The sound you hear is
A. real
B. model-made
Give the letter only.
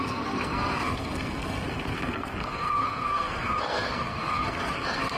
B